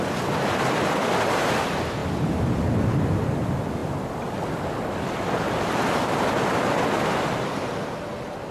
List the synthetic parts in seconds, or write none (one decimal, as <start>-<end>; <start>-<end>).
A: none